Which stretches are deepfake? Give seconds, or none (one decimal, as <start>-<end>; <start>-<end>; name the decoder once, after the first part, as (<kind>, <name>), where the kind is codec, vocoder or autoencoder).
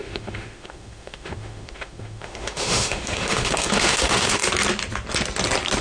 0.0-4.4 (autoencoder, DAC-VAE)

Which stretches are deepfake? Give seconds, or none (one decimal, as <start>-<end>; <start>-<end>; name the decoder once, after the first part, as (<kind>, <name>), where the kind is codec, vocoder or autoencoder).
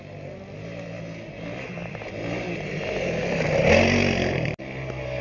none